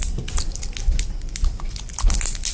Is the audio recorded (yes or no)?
yes